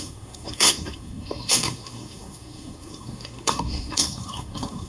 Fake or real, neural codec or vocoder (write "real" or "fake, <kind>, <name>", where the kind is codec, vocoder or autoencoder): fake, codec, SNAC